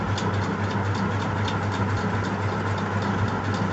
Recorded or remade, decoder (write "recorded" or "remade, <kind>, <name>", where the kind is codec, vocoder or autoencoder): recorded